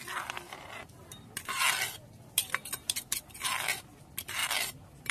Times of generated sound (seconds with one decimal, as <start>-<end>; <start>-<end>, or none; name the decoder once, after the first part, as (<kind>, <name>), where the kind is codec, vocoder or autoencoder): none